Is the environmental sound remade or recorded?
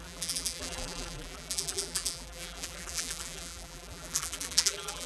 remade